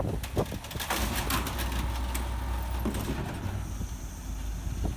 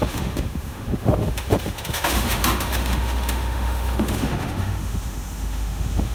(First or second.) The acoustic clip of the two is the first